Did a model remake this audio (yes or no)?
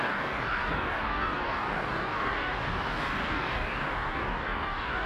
yes